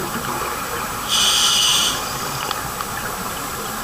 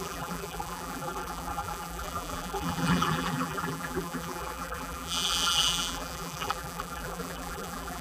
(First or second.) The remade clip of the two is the second